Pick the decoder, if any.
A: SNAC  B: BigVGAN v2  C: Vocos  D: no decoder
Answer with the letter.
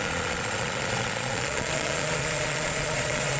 C